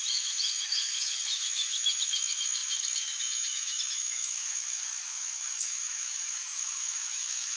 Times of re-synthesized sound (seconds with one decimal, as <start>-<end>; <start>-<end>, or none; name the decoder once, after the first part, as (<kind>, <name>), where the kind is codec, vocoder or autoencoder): 0.0-7.6 (autoencoder, DAC-VAE)

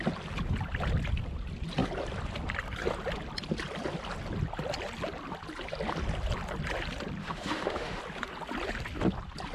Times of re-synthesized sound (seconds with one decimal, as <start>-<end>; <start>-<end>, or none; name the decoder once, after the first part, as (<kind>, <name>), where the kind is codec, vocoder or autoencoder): 7.2-8.0 (autoencoder, DAC-VAE)

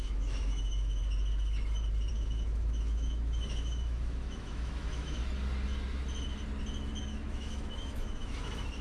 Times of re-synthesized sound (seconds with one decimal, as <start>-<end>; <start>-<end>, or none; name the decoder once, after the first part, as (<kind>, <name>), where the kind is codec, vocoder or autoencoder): 0.0-1.0 (autoencoder, DAC-VAE); 2.1-5.2; 7.0-8.8

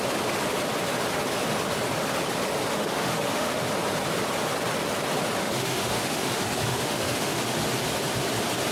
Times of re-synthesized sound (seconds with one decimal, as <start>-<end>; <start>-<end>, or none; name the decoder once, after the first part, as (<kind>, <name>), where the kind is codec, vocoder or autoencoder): 2.7-3.6 (autoencoder, DAC-VAE); 5.4-7.4

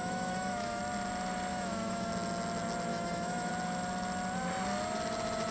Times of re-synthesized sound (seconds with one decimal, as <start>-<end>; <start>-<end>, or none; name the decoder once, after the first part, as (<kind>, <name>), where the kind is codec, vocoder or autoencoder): 0.0-0.8 (autoencoder, DAC-VAE); 1.5-2.1; 2.9-3.5

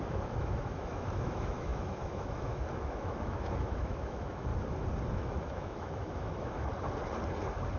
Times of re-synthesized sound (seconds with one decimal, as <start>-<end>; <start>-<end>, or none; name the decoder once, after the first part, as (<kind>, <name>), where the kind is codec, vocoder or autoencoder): 0.0-4.5 (autoencoder, DAC-VAE); 5.1-6.7

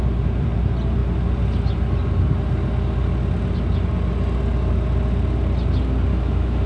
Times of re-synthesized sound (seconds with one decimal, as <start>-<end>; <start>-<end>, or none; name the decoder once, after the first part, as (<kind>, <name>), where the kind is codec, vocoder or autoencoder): 6.1-6.7 (autoencoder, DAC-VAE)

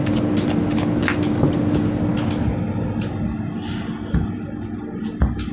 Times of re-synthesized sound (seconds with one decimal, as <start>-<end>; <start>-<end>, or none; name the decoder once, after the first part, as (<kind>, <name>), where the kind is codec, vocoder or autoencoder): none